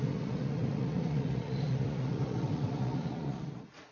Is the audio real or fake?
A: fake